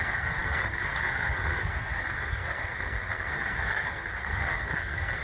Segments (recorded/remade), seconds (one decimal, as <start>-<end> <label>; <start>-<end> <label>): 0.0-5.2 remade